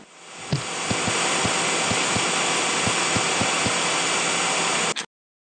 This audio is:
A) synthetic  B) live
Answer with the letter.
B